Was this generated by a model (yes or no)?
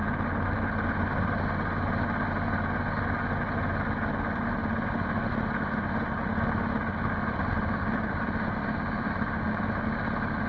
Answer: no